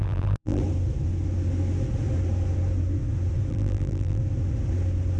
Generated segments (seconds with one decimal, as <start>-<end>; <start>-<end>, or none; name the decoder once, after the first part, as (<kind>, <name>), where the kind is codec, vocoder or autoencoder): 0.0-0.6 (vocoder, BigVGAN v2); 3.5-4.2